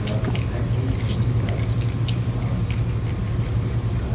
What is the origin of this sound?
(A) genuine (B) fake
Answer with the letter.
A